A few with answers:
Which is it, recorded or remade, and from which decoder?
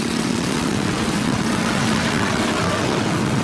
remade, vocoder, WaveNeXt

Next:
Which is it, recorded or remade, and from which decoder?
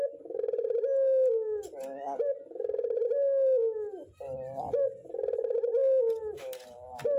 recorded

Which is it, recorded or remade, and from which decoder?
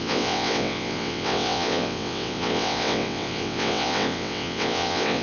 remade, vocoder, WaveNeXt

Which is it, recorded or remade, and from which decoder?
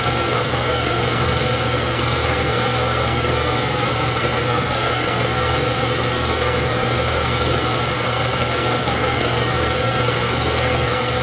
remade, codec, SNAC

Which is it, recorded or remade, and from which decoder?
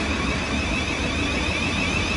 recorded